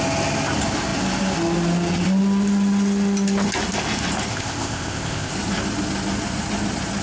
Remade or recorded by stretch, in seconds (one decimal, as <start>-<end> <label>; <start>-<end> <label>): 0.0-4.3 recorded; 4.3-5.3 remade; 5.3-7.0 recorded